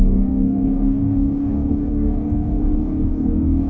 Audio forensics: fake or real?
fake